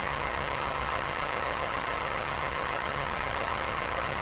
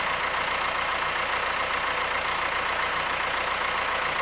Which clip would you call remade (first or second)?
first